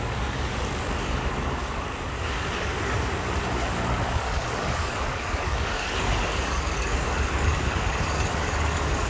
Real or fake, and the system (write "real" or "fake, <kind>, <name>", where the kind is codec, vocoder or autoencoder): fake, codec, DAC